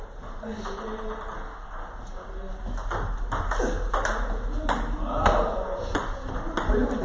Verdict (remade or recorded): recorded